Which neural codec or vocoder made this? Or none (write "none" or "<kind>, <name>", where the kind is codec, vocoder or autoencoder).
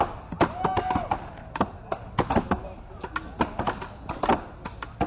none